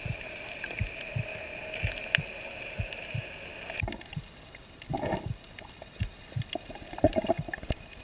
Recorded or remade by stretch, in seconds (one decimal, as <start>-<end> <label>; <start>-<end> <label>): 0.0-8.0 recorded